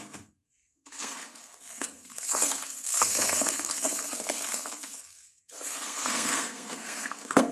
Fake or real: fake